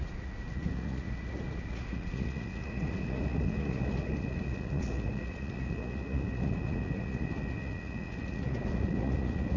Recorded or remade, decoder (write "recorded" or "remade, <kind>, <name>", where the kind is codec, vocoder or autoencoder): remade, vocoder, Vocos